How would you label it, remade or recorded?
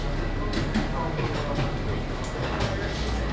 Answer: recorded